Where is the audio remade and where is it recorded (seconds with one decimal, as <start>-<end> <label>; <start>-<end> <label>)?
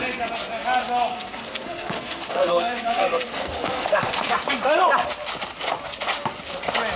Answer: 0.0-1.1 recorded; 1.1-4.5 remade; 4.5-7.0 recorded